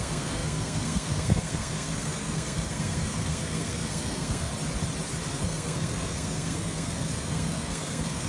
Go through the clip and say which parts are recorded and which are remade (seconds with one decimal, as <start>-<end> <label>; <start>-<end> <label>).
0.0-4.5 remade; 4.5-5.3 recorded; 5.3-8.3 remade